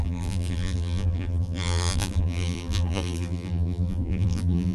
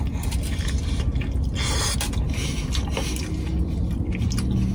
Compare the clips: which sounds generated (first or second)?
first